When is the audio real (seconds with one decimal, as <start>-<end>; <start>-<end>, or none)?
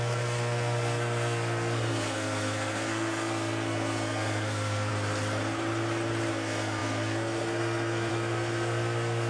4.9-6.3